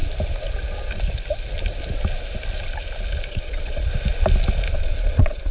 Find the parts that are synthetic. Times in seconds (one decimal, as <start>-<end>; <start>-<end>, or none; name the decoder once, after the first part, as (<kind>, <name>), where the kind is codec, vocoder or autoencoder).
3.3-3.9 (vocoder, Vocos); 4.7-5.5